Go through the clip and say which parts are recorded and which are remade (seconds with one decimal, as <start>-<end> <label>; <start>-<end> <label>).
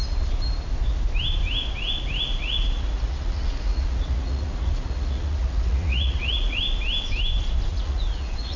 0.0-2.3 recorded; 2.3-6.6 remade; 6.6-7.7 recorded; 7.7-8.6 remade